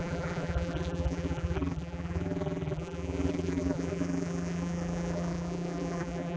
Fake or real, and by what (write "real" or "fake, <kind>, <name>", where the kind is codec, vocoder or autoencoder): fake, vocoder, BigVGAN v2